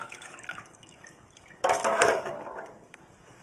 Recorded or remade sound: remade